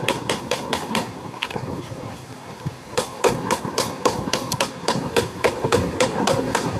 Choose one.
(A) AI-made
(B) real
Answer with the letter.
A